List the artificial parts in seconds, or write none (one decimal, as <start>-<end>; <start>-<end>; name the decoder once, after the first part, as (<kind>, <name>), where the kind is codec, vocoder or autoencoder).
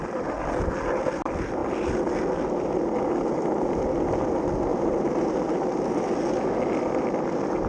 4.7-6.0 (vocoder, BigVGAN v2)